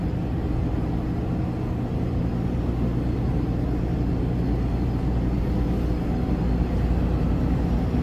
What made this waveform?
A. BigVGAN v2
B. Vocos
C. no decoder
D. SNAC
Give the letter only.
C